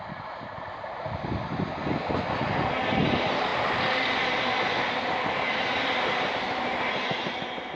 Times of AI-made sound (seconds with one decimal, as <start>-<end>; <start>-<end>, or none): none